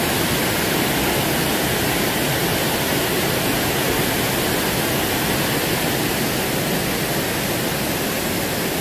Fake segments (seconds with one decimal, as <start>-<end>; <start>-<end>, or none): none